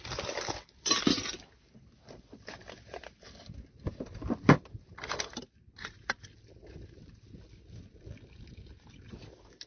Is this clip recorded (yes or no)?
yes